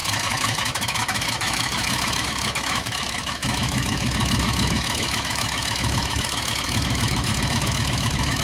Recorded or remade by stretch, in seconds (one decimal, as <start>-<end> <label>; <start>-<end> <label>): 0.0-8.4 remade